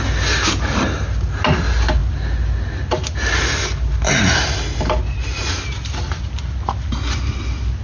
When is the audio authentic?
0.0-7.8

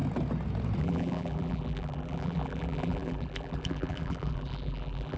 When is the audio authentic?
0.0-0.8

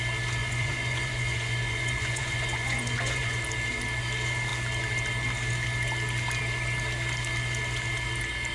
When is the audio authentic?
0.0-0.4; 3.4-8.5

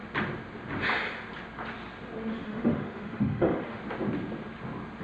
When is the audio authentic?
0.0-2.3; 3.8-5.0

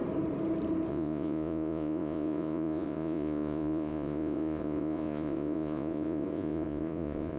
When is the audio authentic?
0.0-0.9